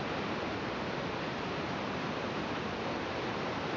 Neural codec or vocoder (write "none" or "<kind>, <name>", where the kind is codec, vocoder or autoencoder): none